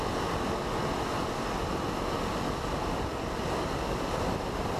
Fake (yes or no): no